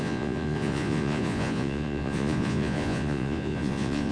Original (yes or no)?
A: no